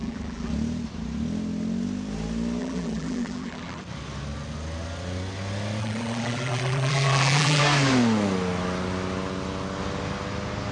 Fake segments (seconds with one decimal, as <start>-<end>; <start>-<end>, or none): 0.0-0.5; 2.6-3.8; 5.8-7.6